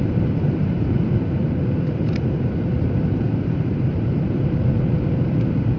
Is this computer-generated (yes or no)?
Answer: yes